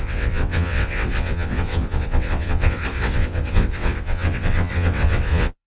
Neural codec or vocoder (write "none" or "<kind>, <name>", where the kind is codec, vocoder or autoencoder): vocoder, WaveNeXt